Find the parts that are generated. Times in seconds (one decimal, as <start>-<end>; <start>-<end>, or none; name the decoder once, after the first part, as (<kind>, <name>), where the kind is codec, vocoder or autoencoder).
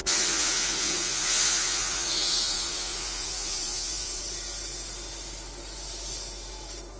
0.0-4.2 (vocoder, Vocos)